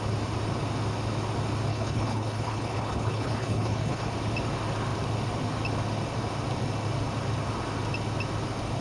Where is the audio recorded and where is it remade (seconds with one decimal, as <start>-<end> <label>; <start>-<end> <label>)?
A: 0.0-1.7 recorded; 1.7-4.1 remade; 4.1-8.8 recorded